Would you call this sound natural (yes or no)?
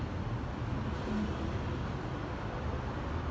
yes